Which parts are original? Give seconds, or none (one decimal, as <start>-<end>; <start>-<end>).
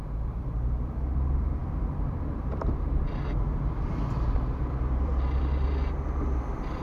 5.1-6.8